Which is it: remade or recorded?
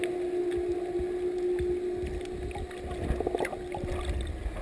recorded